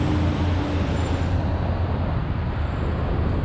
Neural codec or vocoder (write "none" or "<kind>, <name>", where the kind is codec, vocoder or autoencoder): none